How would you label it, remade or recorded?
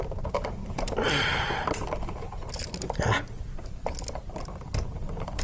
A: remade